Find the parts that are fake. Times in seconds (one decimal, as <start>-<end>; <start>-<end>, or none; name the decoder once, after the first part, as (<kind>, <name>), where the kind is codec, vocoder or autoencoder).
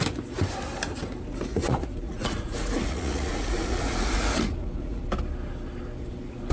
1.5-5.0 (vocoder, Vocos)